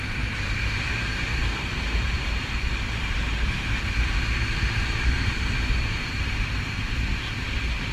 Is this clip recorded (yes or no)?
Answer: no